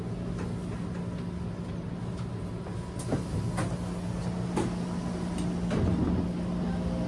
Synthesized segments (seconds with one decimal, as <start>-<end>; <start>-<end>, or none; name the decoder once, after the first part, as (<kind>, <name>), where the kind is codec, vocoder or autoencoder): none